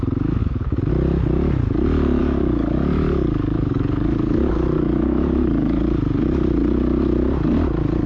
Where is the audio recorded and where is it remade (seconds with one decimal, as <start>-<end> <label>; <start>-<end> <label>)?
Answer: 0.0-0.4 recorded; 0.4-0.9 remade; 0.9-2.2 recorded; 2.2-5.8 remade; 5.8-8.1 recorded